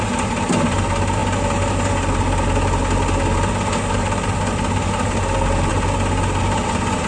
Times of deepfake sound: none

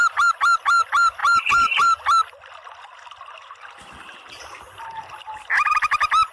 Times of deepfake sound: none